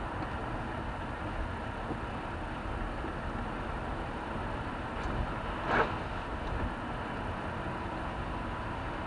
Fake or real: real